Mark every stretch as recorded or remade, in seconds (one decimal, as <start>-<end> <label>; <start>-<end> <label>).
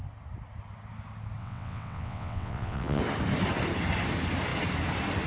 0.0-1.4 recorded; 1.4-3.0 remade; 3.0-5.3 recorded